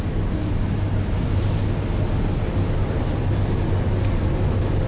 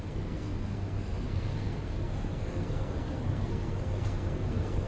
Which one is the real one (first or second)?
first